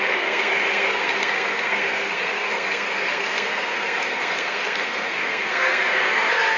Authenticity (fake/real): fake